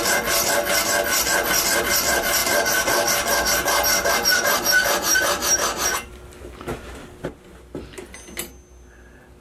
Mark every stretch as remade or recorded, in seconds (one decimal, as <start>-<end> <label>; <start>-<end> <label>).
0.0-9.4 recorded